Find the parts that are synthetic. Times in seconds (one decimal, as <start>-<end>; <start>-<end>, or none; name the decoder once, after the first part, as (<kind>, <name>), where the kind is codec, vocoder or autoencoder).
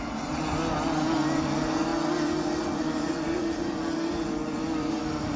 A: none